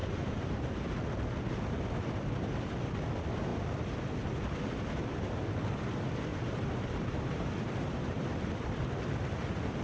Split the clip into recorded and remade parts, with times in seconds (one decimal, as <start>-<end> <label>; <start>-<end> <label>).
0.0-0.7 remade; 0.7-6.3 recorded; 6.3-8.3 remade; 8.3-9.8 recorded